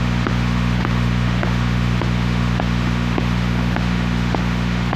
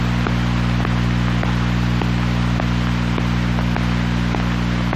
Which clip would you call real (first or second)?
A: second